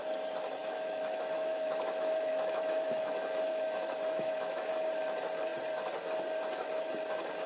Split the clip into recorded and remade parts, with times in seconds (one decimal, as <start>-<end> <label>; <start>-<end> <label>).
0.0-0.6 recorded; 0.6-4.7 remade; 4.7-7.5 recorded